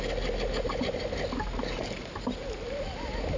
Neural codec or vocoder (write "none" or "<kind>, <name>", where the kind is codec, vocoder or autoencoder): none